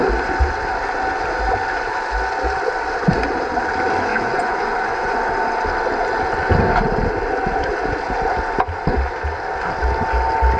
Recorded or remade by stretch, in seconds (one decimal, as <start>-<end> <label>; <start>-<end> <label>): 0.0-4.1 recorded; 4.1-5.2 remade; 5.2-10.6 recorded